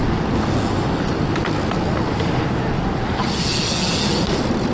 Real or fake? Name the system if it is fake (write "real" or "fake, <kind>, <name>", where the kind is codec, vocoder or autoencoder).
real